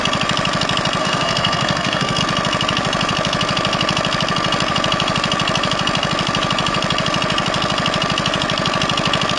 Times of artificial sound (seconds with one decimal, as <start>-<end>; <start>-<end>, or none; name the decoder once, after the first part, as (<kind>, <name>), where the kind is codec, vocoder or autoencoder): 1.0-2.2 (codec, SNAC)